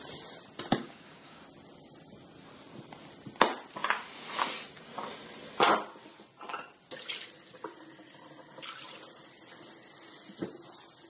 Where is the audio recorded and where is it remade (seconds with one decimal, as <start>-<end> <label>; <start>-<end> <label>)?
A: 0.0-0.8 recorded; 0.8-1.4 remade; 1.4-11.1 recorded